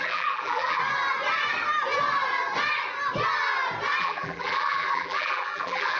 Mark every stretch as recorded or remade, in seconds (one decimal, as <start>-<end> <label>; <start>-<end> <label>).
0.0-0.8 remade; 0.8-4.0 recorded; 4.0-6.0 remade